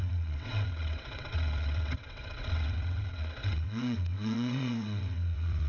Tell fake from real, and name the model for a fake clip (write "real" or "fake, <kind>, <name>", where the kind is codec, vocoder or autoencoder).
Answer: fake, vocoder, WaveNeXt